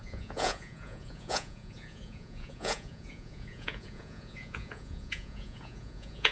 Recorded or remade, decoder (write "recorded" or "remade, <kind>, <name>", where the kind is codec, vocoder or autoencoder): remade, vocoder, Vocos